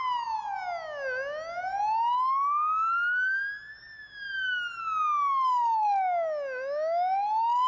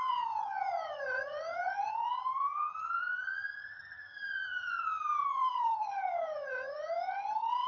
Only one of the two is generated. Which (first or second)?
second